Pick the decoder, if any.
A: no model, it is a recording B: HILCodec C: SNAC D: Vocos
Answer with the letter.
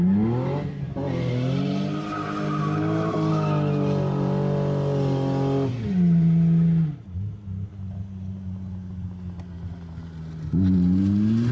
A